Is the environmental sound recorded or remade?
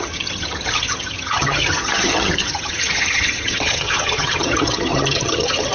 remade